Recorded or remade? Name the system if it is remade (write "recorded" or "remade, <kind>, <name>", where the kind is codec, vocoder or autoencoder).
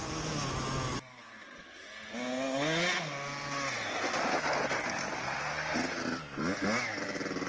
recorded